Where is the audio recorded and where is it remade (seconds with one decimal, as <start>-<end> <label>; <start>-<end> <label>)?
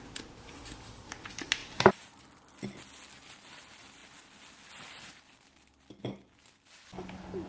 0.0-7.5 recorded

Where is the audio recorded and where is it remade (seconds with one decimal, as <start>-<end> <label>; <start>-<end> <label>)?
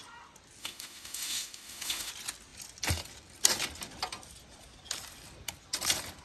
0.0-0.6 recorded; 0.6-2.1 remade; 2.1-6.2 recorded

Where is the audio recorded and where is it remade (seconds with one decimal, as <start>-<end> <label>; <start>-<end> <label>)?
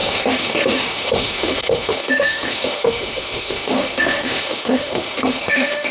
0.0-5.9 remade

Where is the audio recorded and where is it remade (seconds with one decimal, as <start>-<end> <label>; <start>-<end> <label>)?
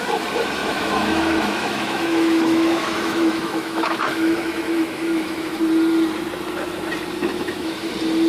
0.0-0.6 recorded; 0.6-5.6 remade; 5.6-7.2 recorded; 7.2-7.9 remade; 7.9-8.3 recorded